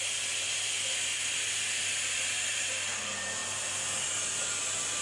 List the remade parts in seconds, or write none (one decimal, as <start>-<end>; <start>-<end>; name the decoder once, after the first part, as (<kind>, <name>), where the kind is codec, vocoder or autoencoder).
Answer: none